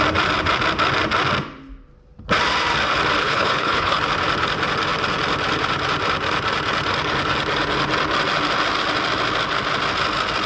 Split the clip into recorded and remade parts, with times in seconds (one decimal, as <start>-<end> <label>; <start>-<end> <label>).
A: 0.0-3.2 recorded; 3.2-4.0 remade; 4.0-10.5 recorded